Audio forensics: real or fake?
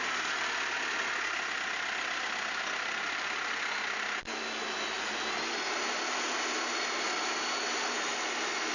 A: real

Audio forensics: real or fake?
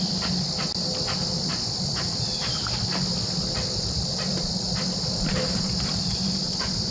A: real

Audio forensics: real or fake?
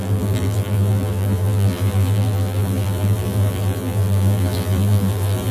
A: fake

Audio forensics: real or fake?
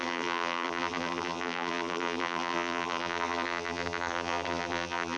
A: fake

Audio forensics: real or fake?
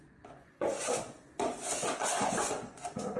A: fake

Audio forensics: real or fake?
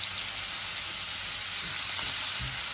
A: real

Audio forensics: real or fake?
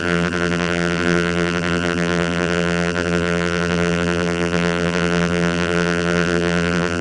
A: fake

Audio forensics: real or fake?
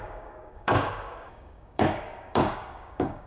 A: fake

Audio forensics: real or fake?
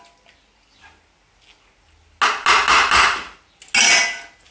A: real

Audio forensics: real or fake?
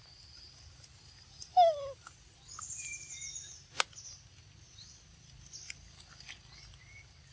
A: real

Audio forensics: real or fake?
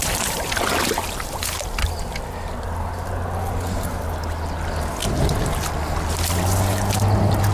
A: real